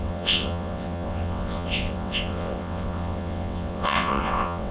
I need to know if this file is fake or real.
fake